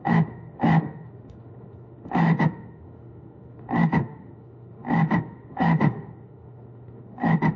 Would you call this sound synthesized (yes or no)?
yes